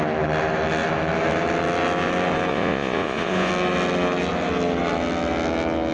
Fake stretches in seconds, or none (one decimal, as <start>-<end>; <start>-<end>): 2.5-3.5